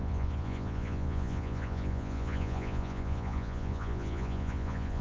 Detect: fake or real fake